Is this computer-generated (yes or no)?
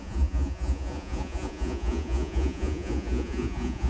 yes